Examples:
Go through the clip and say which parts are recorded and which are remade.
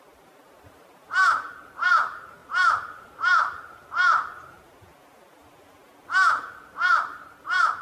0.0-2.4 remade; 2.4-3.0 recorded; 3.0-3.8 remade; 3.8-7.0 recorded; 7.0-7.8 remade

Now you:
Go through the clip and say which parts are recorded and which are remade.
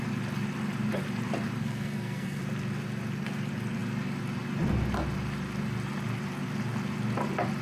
0.0-1.6 recorded; 1.6-2.4 remade; 2.4-7.6 recorded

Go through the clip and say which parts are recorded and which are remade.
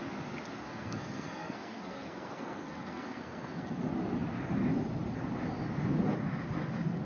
0.0-0.6 recorded; 0.6-3.8 remade; 3.8-7.0 recorded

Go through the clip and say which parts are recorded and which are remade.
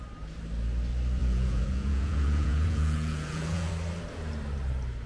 0.0-1.2 recorded; 1.2-3.7 remade; 3.7-5.1 recorded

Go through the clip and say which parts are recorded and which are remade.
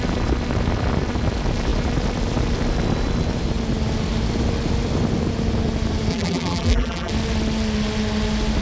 0.0-6.1 recorded; 6.1-7.1 remade; 7.1-8.6 recorded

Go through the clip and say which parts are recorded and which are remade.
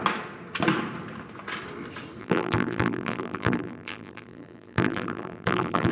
0.0-2.2 recorded; 2.2-5.9 remade